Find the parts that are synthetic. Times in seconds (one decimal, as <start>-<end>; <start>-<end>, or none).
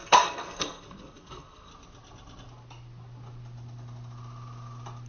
0.0-1.7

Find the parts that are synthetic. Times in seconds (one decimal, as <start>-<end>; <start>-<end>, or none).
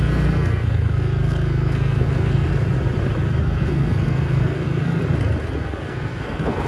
0.0-2.5; 3.4-5.0; 5.6-6.7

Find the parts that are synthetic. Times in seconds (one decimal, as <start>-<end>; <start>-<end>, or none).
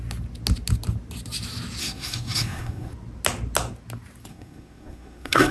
1.8-2.9; 4.3-5.5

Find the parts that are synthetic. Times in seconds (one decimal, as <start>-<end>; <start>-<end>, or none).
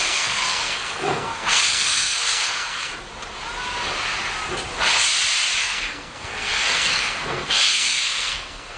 0.0-2.9; 5.6-8.8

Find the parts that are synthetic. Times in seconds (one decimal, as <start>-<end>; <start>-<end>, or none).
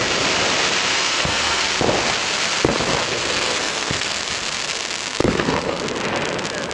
0.9-1.6; 3.0-4.2; 5.2-5.8